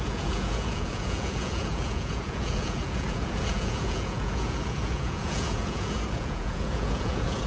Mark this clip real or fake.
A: fake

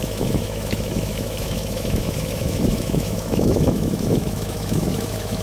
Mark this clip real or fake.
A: fake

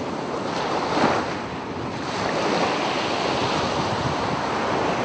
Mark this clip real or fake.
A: real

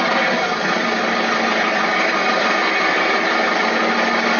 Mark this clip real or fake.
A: real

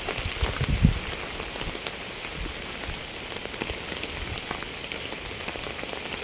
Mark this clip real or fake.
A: real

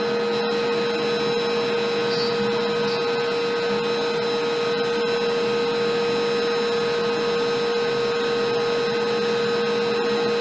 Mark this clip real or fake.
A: real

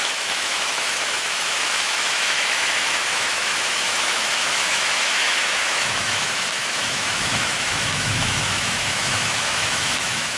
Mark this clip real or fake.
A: fake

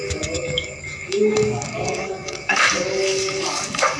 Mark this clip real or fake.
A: fake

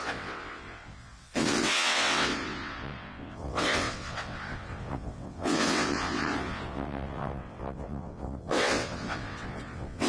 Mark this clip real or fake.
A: fake